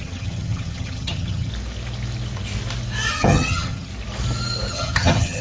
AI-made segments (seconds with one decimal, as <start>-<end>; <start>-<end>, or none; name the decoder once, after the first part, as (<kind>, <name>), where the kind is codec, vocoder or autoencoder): 0.0-1.5 (vocoder, HiFi-GAN); 3.1-3.9; 4.7-5.4